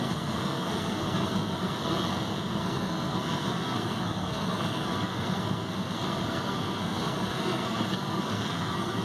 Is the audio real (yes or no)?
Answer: no